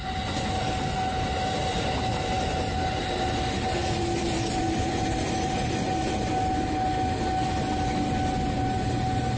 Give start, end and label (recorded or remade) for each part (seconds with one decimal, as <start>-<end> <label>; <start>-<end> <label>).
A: 0.0-3.8 recorded; 3.8-5.7 remade; 5.7-9.4 recorded